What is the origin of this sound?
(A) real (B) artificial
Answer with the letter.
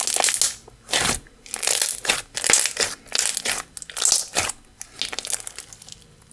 A